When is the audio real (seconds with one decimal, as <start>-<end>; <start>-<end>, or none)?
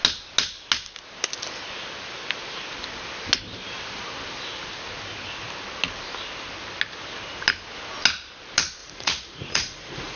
0.0-8.8